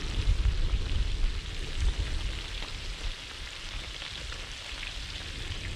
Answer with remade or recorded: recorded